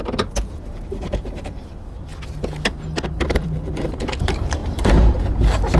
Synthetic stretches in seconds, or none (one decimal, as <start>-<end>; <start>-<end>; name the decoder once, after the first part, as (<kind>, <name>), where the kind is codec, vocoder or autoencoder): 0.0-2.1 (vocoder, BigVGAN v2); 3.1-5.8